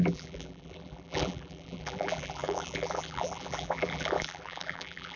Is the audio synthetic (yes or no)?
yes